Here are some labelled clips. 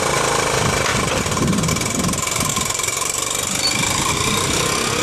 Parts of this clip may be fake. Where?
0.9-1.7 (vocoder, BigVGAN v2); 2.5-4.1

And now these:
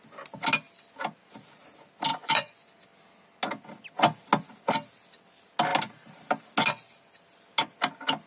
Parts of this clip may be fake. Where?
2.1-2.7 (vocoder, Vocos)

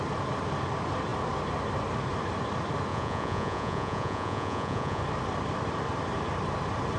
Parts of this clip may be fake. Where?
2.9-5.0 (vocoder, Vocos)

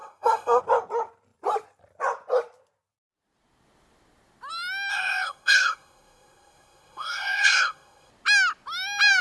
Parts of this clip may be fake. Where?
0.0-0.6 (codec, SNAC); 4.9-8.1

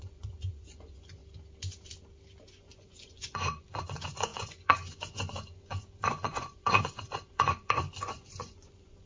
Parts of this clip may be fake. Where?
0.0-1.2 (vocoder, Vocos); 2.5-9.1

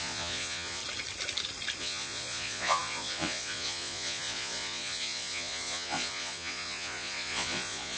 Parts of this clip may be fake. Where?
0.0-0.8 (vocoder, Vocos); 1.8-8.0

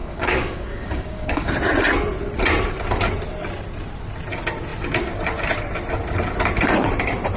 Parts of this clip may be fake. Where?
0.0-1.5 (codec, DAC)

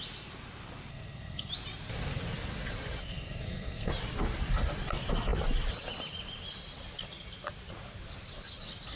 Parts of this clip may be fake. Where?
0.9-1.5 (codec, SNAC); 3.0-3.9